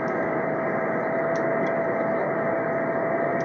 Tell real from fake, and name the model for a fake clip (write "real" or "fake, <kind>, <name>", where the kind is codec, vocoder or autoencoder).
real